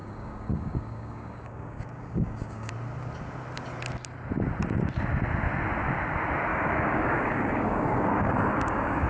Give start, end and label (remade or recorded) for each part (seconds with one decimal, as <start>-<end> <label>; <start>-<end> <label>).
0.0-2.7 remade; 2.7-6.5 recorded; 6.5-9.1 remade